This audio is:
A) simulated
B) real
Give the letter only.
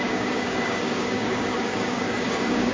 A